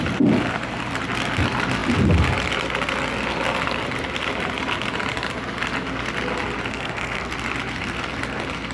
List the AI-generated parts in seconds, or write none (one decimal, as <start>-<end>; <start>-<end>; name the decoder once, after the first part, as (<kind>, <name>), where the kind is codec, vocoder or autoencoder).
6.7-7.3 (codec, SNAC)